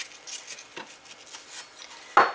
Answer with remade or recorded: recorded